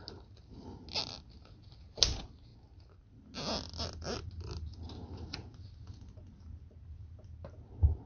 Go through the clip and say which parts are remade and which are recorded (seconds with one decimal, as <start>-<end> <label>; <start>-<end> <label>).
0.0-8.1 recorded